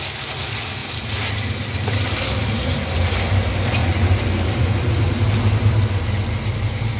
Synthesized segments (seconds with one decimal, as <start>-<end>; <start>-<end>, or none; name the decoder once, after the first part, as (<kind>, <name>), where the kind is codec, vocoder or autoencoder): none